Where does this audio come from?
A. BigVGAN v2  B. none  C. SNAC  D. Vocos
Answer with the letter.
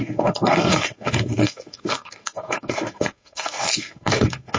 C